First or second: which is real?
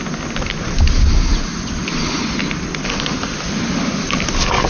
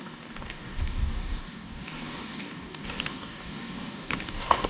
first